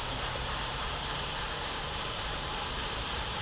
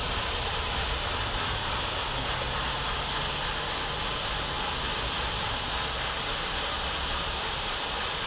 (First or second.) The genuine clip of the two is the second